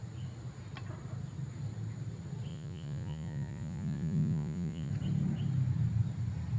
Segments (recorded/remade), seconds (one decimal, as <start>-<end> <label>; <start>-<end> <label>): 0.0-2.5 recorded; 2.5-4.9 remade; 4.9-6.6 recorded